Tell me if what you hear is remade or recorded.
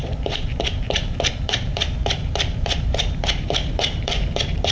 remade